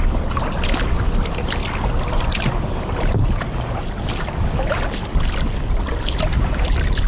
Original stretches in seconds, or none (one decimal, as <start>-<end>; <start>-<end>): 0.0-7.1